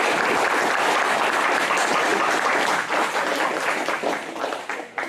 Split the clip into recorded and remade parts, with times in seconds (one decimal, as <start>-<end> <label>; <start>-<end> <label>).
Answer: 0.0-5.1 recorded